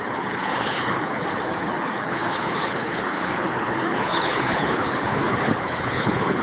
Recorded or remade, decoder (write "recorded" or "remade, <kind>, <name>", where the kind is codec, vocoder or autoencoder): remade, codec, HILCodec